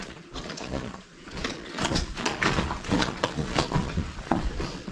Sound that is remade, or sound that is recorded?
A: remade